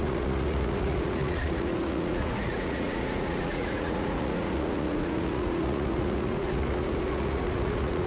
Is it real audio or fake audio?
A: fake